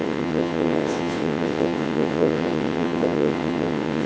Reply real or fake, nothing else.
fake